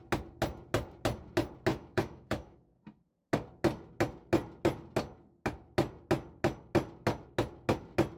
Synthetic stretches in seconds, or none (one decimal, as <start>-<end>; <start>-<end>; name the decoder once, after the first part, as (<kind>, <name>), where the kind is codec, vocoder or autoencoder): 1.7-2.8 (autoencoder, DAC-VAE)